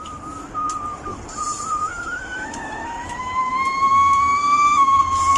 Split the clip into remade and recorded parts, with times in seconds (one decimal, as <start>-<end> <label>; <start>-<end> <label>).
0.0-1.8 recorded; 1.8-5.0 remade; 5.0-5.4 recorded